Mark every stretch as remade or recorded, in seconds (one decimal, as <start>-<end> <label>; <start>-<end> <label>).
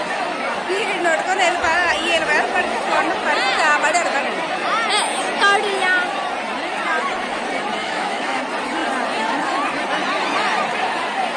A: 0.0-7.8 recorded; 7.8-8.4 remade; 8.4-11.4 recorded